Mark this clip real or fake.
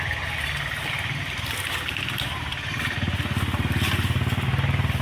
real